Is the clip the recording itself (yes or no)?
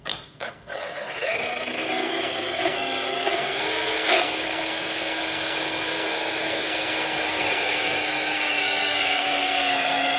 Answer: no